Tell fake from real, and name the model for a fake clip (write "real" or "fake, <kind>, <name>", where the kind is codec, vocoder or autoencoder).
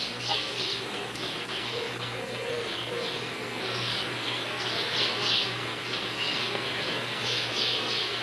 fake, codec, SNAC